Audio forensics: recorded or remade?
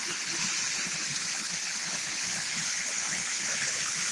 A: remade